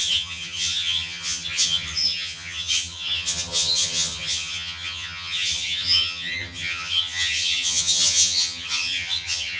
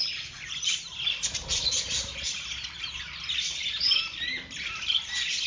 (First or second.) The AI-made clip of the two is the first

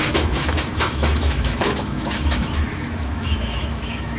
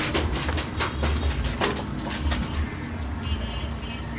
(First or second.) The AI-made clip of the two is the first